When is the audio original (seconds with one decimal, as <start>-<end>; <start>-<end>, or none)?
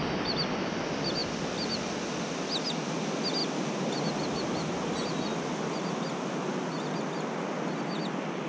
0.0-3.4; 3.9-8.5